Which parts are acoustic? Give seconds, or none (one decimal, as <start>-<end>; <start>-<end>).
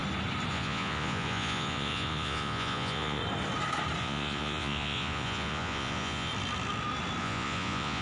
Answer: 0.0-0.5; 3.2-4.0; 6.3-7.2